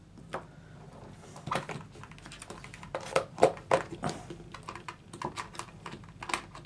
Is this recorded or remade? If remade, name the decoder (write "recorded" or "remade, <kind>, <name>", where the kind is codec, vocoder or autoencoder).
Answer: recorded